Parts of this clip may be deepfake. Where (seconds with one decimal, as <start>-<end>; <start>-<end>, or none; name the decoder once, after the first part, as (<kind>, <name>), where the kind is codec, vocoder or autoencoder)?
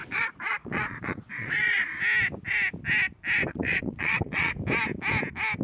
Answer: 0.0-2.0 (vocoder, Vocos); 3.5-4.5